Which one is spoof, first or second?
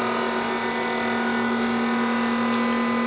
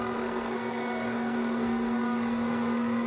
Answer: second